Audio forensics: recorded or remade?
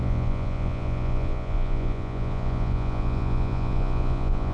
remade